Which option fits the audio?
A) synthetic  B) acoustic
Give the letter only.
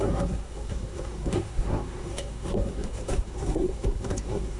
A